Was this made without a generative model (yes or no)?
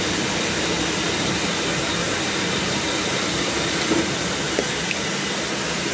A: yes